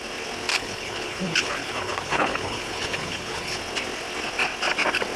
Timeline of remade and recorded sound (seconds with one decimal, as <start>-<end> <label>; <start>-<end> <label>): 0.0-0.5 recorded; 0.5-3.6 remade; 3.6-5.2 recorded